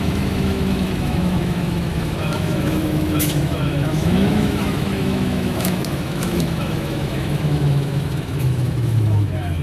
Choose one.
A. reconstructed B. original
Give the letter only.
A